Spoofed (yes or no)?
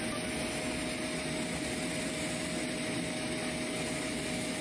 no